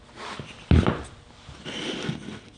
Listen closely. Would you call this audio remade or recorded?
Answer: recorded